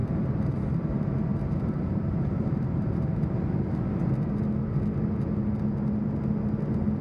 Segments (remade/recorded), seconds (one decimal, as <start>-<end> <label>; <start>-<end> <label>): 0.0-0.9 remade; 0.9-1.3 recorded; 1.3-3.6 remade; 3.6-7.0 recorded